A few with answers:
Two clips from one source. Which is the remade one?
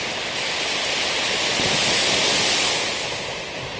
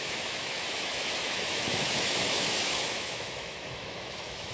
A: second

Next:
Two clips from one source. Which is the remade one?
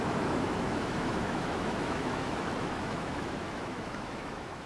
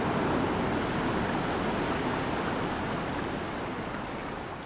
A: first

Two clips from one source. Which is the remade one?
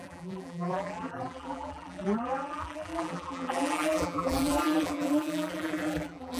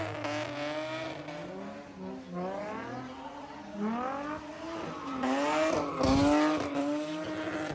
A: first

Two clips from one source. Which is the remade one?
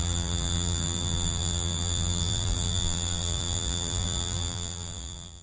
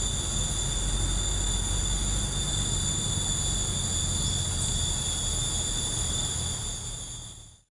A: first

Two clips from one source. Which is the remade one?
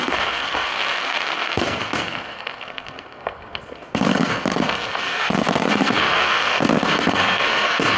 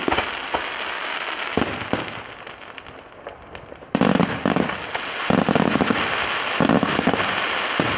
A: first